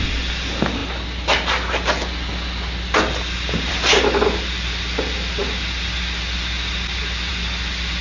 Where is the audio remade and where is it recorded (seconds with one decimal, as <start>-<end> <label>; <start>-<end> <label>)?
0.0-8.0 recorded